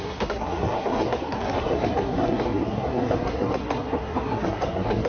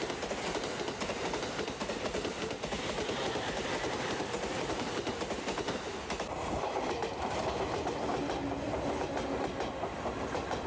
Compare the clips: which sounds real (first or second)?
second